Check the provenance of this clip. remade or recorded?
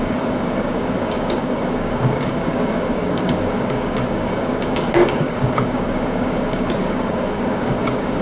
remade